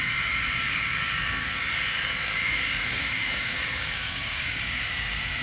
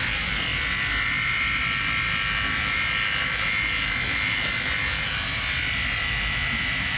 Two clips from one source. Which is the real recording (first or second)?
second